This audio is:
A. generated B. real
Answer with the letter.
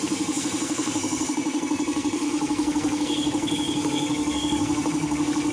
A